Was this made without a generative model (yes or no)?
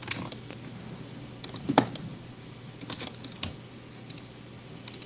yes